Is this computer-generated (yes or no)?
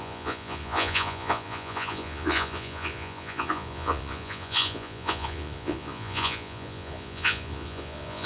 yes